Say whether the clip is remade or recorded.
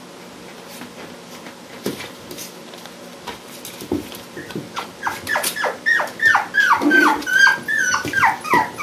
recorded